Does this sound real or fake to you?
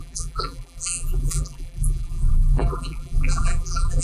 fake